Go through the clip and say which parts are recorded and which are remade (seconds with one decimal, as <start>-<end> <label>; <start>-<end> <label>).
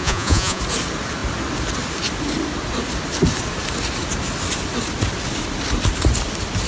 0.0-0.6 remade; 0.6-6.7 recorded